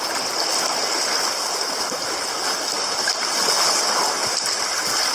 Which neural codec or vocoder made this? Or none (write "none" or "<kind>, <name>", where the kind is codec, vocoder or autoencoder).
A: none